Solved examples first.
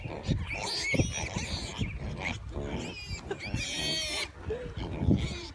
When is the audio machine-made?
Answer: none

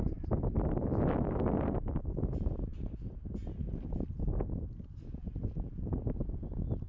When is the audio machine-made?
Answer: none

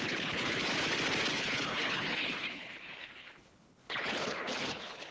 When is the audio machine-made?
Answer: 0.0-0.7 (codec, HILCodec); 1.3-5.1